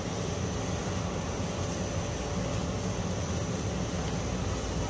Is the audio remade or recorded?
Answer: recorded